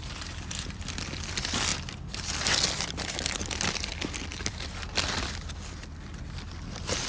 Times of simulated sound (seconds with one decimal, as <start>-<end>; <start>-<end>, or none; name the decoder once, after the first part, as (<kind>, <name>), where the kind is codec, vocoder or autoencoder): none